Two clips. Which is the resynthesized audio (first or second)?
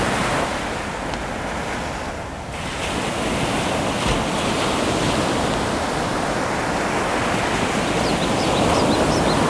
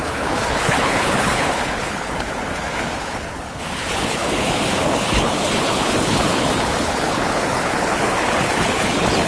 second